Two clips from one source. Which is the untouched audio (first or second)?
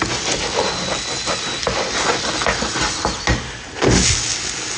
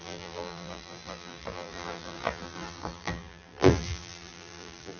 first